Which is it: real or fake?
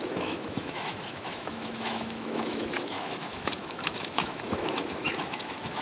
fake